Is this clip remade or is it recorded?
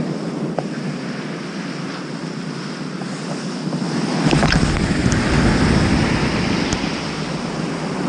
recorded